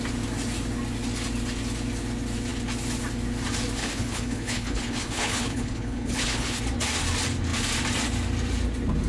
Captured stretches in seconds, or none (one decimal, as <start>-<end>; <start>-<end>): 0.0-3.8; 6.6-9.1